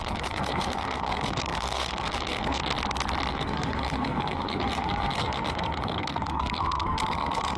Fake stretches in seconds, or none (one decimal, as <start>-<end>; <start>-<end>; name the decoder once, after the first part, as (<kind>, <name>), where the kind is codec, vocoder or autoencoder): 0.0-2.6 (codec, SNAC); 3.3-7.6